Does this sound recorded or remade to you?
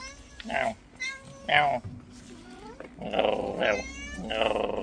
recorded